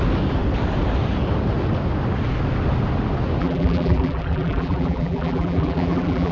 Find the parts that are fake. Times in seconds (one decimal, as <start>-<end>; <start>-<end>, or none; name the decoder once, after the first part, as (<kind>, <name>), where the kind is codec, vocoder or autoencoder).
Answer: 3.4-6.3 (vocoder, BigVGAN v2)